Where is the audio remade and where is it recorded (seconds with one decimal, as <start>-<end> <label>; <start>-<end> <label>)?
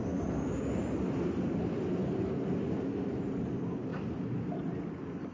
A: 0.0-5.3 recorded